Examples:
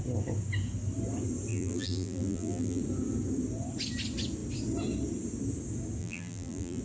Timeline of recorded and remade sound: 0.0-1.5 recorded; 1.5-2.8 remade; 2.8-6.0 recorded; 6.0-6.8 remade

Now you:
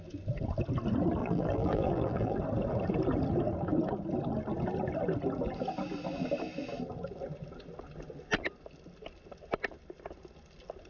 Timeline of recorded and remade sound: 0.0-1.2 recorded; 1.2-2.4 remade; 2.4-10.9 recorded